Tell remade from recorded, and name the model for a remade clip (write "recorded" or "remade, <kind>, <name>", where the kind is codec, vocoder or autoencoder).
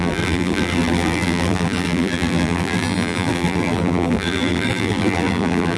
remade, vocoder, BigVGAN v2